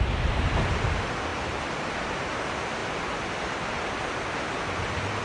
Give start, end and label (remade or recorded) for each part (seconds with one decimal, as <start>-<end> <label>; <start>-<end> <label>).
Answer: 0.0-1.3 recorded; 1.3-2.3 remade; 2.3-2.8 recorded; 2.8-4.2 remade; 4.2-5.2 recorded